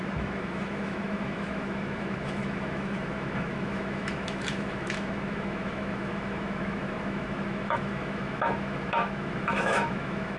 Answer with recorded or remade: remade